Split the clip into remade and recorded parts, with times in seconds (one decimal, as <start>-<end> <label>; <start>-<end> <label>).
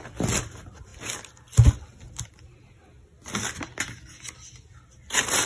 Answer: 0.0-5.5 recorded